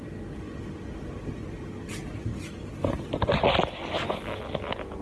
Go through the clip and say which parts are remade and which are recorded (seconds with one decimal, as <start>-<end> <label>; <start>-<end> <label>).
0.0-5.0 recorded